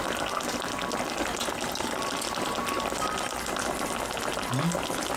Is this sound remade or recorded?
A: recorded